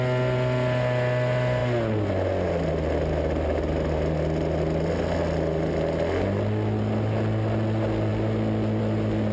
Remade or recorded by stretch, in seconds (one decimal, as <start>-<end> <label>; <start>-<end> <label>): 0.0-9.3 recorded